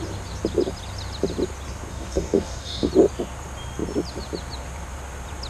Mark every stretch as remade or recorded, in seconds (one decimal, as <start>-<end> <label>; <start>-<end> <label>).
0.0-1.9 recorded; 1.9-2.9 remade; 2.9-5.5 recorded

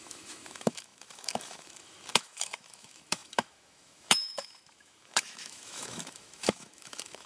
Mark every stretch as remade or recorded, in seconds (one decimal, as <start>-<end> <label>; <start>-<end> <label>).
0.0-7.3 remade

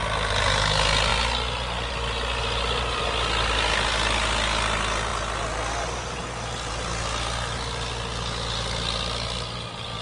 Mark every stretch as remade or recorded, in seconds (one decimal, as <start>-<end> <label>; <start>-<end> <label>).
0.0-10.0 recorded

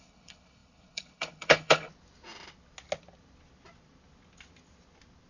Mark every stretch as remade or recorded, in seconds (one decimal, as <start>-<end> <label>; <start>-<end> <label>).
0.0-1.9 remade; 1.9-5.3 recorded

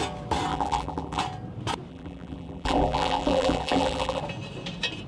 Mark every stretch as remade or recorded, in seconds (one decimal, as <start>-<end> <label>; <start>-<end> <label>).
0.0-0.5 recorded; 0.5-1.2 remade; 1.2-1.9 recorded; 1.9-4.2 remade; 4.2-5.1 recorded

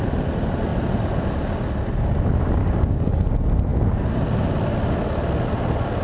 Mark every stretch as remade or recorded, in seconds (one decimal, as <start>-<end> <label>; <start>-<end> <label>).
0.0-2.6 recorded; 2.6-3.3 remade; 3.3-6.0 recorded

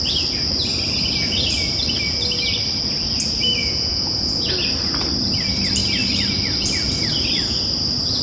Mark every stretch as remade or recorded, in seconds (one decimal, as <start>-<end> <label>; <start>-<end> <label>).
0.0-3.6 recorded; 3.6-4.4 remade; 4.4-8.2 recorded